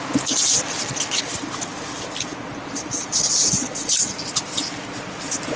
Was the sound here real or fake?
real